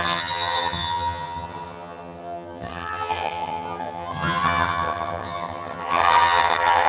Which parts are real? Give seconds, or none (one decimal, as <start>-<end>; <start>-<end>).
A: none